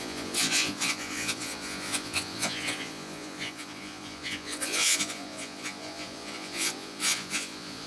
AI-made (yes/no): yes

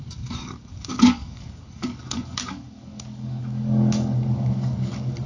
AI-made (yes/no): yes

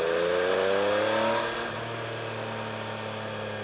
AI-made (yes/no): no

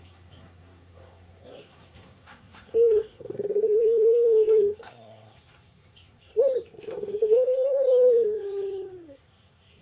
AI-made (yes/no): yes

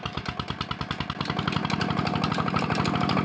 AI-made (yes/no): no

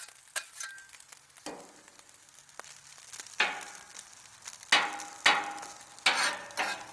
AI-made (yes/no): no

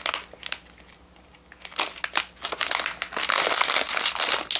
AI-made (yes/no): no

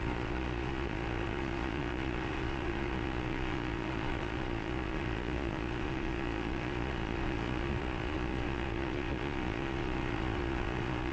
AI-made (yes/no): yes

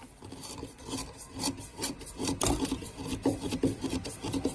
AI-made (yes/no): yes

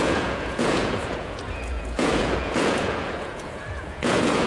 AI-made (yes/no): yes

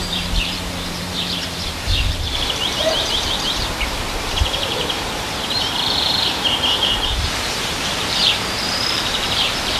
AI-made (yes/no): yes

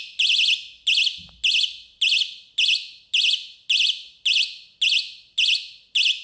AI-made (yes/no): no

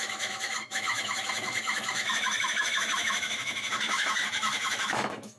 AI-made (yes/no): yes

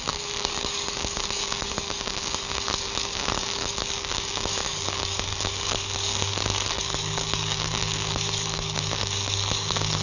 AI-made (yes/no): yes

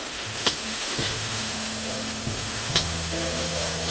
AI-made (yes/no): yes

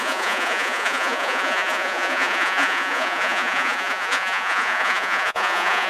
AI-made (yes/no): yes